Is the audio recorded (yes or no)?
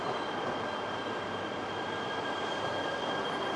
yes